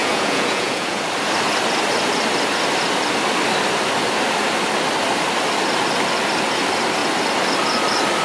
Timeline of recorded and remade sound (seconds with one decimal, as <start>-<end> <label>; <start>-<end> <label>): 0.0-1.0 remade; 1.0-8.2 recorded